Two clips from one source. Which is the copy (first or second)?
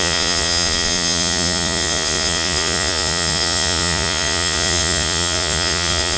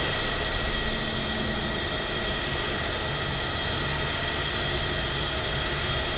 first